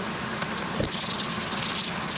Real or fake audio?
real